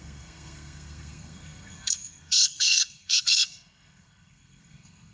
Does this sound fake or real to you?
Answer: fake